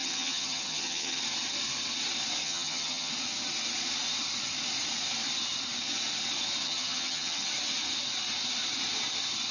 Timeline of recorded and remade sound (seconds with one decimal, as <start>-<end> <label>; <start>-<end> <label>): 0.0-1.2 remade; 1.2-2.4 recorded; 2.4-3.1 remade; 3.1-6.6 recorded; 6.6-7.5 remade; 7.5-9.5 recorded